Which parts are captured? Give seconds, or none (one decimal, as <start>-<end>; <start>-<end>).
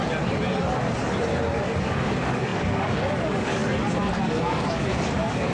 0.0-1.8; 3.6-4.2